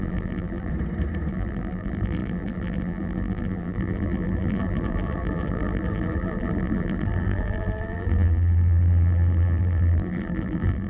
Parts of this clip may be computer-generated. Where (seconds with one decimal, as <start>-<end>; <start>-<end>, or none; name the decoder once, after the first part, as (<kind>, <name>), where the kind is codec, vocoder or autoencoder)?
0.0-0.7 (vocoder, BigVGAN v2); 1.3-10.9